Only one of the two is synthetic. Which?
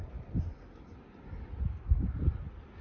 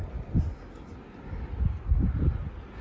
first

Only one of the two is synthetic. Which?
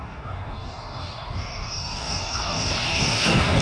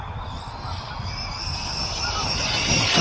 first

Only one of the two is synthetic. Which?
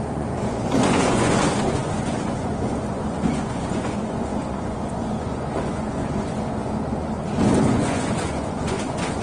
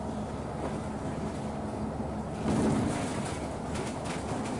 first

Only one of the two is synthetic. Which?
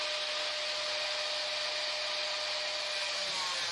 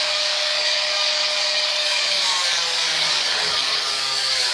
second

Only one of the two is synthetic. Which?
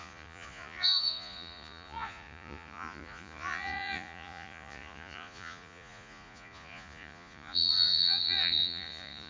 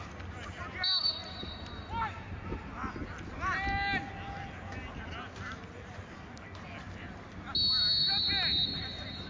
first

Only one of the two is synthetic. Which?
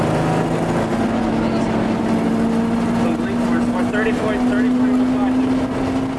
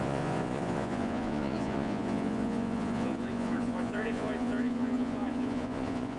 second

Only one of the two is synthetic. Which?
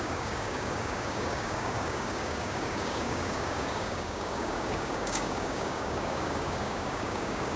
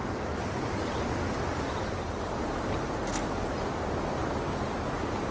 first